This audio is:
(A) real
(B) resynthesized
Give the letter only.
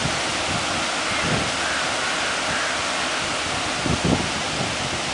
A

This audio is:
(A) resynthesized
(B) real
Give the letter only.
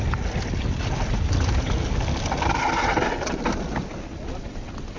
B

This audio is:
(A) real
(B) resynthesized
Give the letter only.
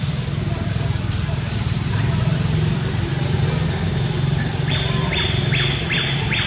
B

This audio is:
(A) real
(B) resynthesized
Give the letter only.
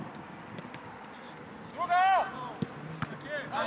A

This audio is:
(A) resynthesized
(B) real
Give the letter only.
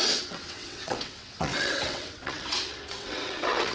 A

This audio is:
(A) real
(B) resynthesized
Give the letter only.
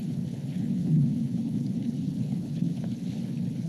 B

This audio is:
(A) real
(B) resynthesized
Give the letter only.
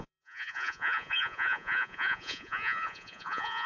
B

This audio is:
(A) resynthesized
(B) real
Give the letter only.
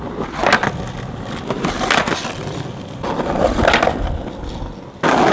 B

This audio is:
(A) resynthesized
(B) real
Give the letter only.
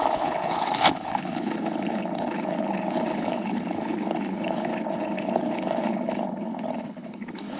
A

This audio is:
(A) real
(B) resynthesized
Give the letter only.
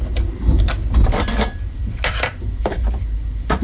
A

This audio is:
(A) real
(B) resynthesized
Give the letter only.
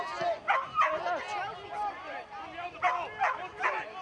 A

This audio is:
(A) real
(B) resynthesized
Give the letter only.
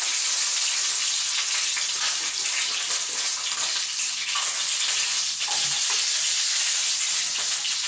A